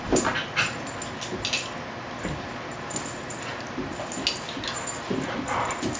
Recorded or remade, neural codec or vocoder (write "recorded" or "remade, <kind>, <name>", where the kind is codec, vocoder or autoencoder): recorded